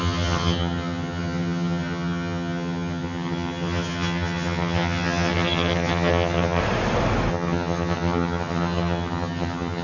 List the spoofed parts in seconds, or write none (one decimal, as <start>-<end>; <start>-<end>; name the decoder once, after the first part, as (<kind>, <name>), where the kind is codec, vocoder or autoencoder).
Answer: 0.0-6.6 (vocoder, HiFi-GAN); 7.3-9.8